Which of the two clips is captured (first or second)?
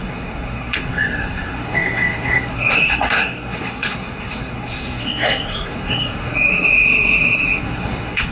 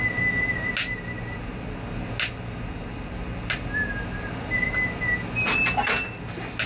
second